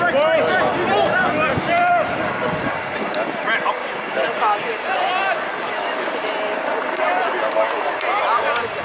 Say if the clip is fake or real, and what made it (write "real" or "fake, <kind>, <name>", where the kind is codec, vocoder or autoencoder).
real